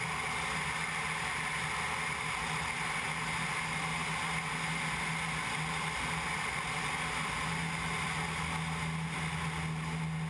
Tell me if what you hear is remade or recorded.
recorded